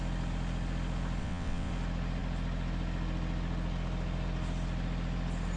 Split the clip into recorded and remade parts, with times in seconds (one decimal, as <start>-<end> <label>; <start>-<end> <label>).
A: 0.0-1.2 recorded; 1.2-1.7 remade; 1.7-5.6 recorded